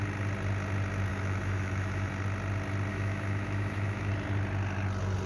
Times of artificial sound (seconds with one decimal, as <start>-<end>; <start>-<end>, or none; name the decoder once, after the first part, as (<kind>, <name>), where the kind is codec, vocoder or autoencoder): 1.1-2.1 (autoencoder, DAC-VAE); 2.9-4.1